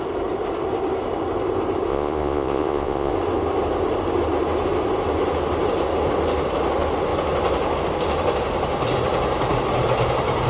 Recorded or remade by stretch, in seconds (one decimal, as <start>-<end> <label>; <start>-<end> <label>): 0.0-1.9 recorded; 1.9-3.1 remade; 3.1-10.5 recorded